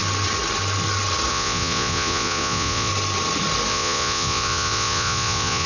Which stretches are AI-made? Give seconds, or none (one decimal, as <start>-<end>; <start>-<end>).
1.3-2.9; 3.7-5.7